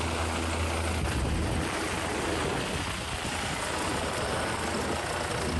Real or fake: real